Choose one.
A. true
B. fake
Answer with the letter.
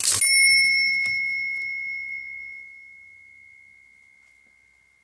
A